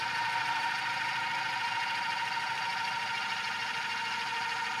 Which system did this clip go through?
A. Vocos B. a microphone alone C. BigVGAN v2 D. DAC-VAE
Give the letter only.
B